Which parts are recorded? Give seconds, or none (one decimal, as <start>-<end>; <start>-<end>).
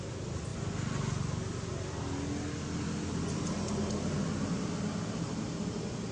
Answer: 0.0-6.1